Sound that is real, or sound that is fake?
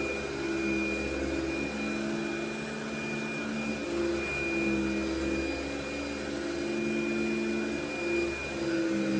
real